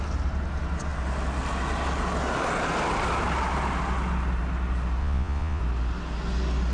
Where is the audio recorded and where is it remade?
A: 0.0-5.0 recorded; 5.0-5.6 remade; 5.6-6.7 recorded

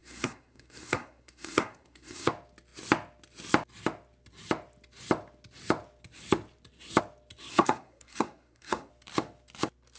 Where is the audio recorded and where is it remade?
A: 0.0-2.3 remade; 2.3-7.5 recorded; 7.5-8.9 remade; 8.9-10.0 recorded

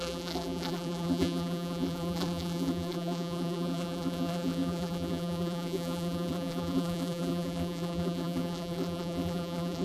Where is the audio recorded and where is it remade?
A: 0.0-9.8 remade

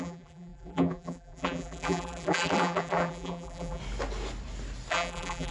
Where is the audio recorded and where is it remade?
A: 0.0-3.8 remade; 3.8-4.9 recorded; 4.9-5.5 remade